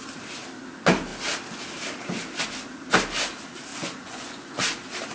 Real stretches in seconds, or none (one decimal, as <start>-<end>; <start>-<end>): 0.0-3.7; 4.6-5.1